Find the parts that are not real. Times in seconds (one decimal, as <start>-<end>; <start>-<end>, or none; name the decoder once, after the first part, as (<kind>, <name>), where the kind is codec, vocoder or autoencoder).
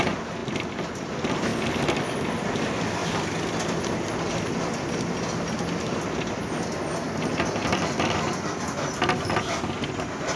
none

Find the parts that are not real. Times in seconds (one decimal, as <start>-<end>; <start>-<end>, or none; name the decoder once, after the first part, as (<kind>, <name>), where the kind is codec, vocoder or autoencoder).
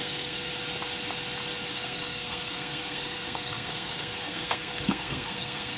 0.0-0.5 (codec, SNAC); 1.7-5.8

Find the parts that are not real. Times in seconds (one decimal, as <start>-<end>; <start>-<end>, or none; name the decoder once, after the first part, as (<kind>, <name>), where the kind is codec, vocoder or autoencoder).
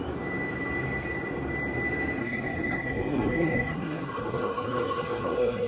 2.2-5.7 (codec, SNAC)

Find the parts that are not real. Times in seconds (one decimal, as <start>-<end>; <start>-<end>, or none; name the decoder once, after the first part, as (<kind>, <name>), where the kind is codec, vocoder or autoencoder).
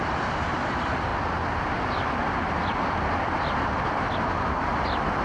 none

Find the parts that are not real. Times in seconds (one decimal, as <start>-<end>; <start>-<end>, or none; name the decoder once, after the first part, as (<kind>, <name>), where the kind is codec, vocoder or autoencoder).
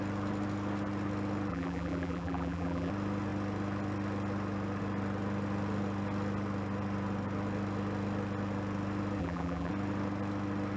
1.5-2.9 (vocoder, BigVGAN v2); 9.2-9.7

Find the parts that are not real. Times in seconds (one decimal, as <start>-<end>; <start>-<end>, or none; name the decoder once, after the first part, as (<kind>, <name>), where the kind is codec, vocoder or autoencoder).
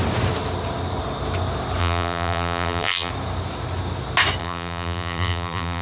1.8-3.1 (vocoder, BigVGAN v2); 4.4-5.8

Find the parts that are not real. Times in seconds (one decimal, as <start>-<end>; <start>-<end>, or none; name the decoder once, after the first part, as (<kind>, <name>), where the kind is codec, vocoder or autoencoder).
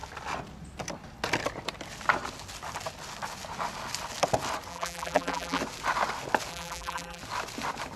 4.7-5.6 (vocoder, BigVGAN v2); 6.5-7.2